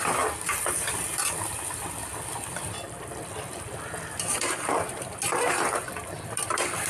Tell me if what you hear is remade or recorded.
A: remade